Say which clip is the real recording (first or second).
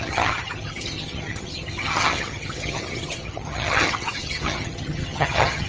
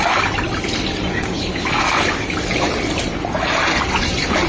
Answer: second